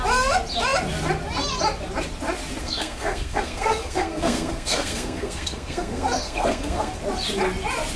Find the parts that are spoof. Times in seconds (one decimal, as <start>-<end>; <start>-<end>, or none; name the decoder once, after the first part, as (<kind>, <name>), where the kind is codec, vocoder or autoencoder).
2.6-7.0 (codec, SNAC)